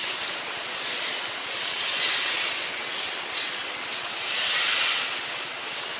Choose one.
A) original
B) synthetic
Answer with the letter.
B